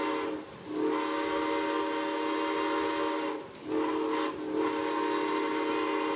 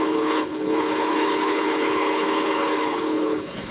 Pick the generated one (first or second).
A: second